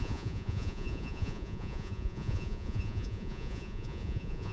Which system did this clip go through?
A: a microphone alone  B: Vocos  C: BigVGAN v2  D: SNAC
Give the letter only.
B